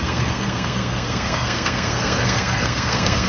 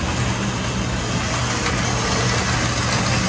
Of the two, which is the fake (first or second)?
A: first